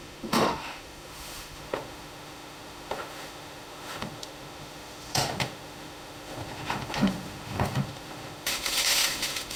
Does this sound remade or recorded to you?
remade